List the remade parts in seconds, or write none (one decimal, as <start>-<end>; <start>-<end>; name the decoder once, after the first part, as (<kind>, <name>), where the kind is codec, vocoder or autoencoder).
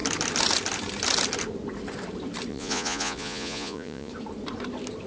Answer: 2.5-4.1 (vocoder, Vocos)